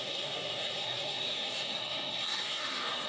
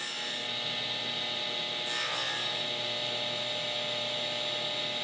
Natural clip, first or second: second